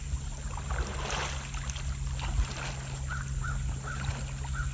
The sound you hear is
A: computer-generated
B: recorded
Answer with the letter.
B